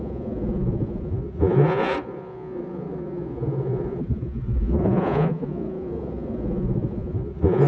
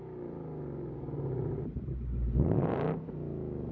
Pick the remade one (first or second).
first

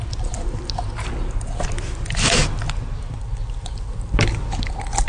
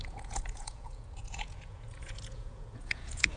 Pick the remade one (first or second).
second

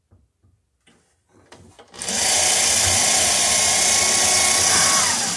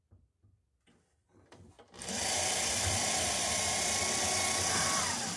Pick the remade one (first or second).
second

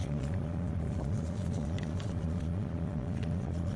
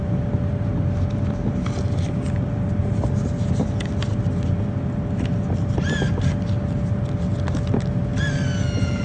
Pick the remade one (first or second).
first